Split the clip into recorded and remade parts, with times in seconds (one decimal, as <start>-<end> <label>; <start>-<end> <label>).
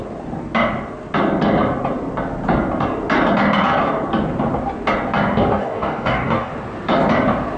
0.0-5.6 recorded; 5.6-6.5 remade; 6.5-7.6 recorded